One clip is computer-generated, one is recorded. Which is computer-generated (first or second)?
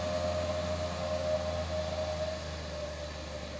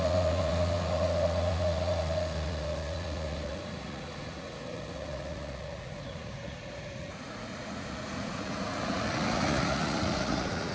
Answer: second